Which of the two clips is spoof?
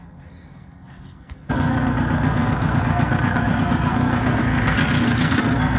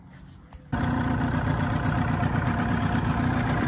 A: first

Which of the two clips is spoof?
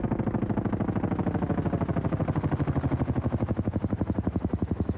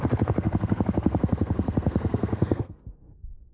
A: second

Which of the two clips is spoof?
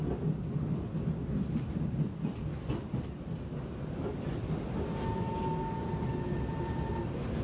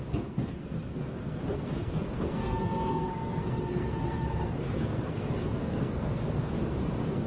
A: second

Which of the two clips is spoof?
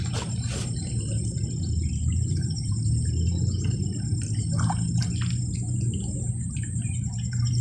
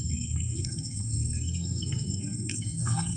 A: second